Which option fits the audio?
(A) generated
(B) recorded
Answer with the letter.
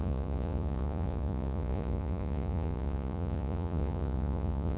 A